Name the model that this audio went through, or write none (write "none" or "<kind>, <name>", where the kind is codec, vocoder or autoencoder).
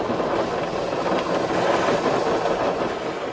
none